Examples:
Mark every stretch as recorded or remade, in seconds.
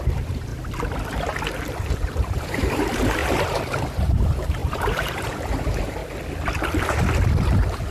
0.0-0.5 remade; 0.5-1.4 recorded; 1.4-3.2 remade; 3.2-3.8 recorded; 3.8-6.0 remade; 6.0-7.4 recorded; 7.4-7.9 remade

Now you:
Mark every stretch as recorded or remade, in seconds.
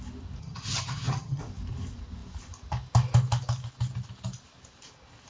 0.0-0.4 recorded; 0.4-1.4 remade; 1.4-5.3 recorded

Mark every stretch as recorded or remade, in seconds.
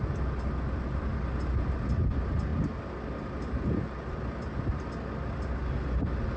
0.0-6.4 recorded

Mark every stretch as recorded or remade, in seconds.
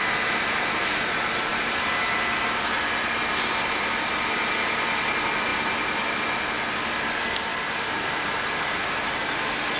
0.0-9.8 recorded